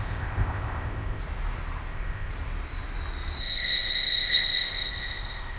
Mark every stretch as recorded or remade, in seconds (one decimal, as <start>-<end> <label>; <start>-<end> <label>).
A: 0.0-1.2 remade; 1.2-1.9 recorded; 1.9-2.3 remade; 2.3-3.4 recorded; 3.4-5.6 remade